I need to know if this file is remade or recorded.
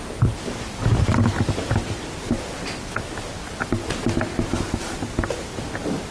recorded